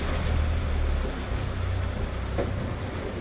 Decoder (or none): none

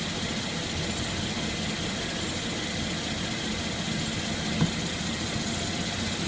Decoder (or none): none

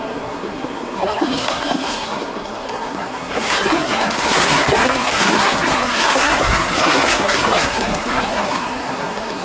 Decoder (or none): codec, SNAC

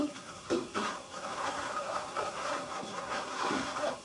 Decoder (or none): codec, SNAC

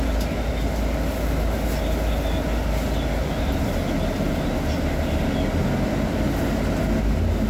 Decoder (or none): none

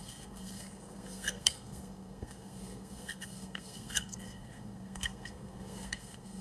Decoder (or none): codec, SNAC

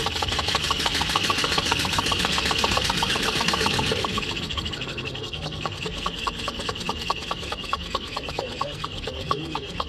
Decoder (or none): codec, SNAC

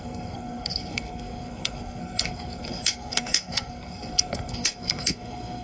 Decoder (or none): codec, SNAC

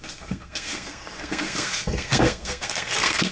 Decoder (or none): codec, SNAC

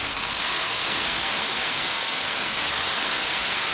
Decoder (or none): codec, SNAC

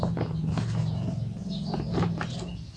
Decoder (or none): none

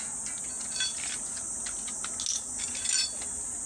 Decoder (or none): none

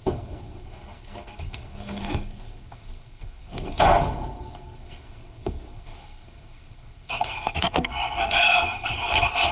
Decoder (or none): codec, SNAC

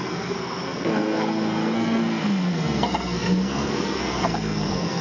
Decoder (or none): codec, SNAC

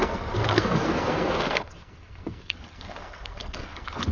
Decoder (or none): codec, SNAC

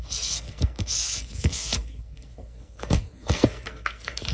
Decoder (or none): codec, SNAC